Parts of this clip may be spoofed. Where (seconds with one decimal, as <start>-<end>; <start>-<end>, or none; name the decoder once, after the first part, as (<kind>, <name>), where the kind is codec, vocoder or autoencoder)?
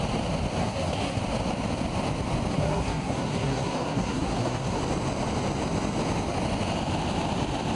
0.6-1.2 (codec, SNAC); 2.5-4.8